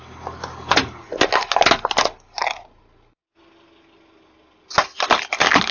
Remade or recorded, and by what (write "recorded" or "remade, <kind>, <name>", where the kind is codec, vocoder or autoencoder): recorded